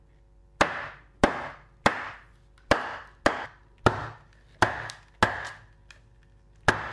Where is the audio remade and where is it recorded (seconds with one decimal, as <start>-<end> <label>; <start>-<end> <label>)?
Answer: 0.0-6.9 recorded